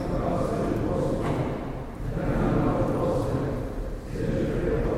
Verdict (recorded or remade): remade